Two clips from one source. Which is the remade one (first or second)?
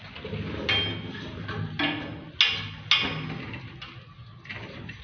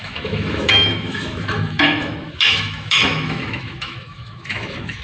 second